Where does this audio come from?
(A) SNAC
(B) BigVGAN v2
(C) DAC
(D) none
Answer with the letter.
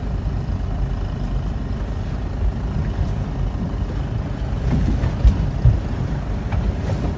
D